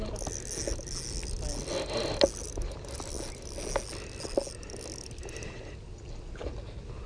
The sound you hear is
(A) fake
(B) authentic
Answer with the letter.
B